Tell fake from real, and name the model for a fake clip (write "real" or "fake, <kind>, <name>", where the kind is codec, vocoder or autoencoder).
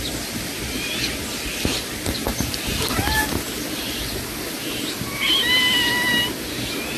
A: real